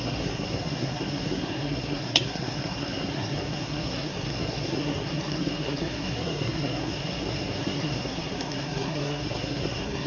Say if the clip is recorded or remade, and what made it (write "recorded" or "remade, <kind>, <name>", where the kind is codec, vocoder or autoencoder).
remade, codec, SNAC